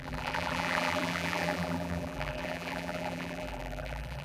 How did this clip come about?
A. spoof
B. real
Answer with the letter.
A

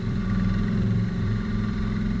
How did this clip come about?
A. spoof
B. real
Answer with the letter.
A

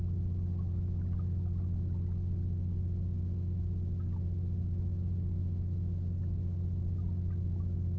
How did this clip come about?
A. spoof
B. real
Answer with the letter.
B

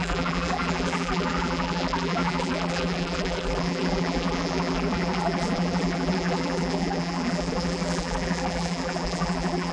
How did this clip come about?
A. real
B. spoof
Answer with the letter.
B